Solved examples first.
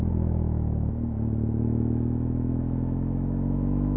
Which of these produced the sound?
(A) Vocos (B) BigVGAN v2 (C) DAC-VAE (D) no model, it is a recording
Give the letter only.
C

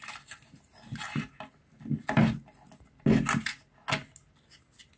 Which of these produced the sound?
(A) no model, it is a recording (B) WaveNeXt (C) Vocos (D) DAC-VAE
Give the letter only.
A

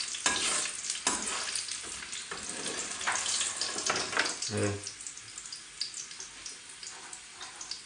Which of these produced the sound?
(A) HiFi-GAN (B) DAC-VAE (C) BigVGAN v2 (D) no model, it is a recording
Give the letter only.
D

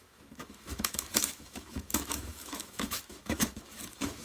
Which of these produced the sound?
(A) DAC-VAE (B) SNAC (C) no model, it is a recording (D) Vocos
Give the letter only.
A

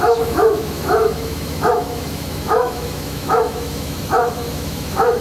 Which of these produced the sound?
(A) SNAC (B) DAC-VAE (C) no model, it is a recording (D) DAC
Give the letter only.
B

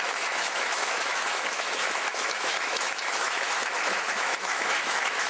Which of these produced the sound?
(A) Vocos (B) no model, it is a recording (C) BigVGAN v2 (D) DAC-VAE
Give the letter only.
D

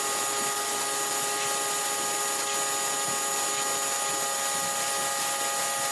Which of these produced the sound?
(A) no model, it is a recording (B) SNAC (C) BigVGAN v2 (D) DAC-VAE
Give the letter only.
A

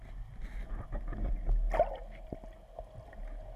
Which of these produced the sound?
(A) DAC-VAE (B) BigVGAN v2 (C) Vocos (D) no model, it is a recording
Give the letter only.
D